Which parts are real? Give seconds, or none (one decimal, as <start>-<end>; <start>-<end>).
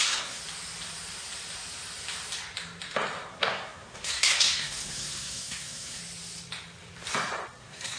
0.4-3.3; 6.0-7.6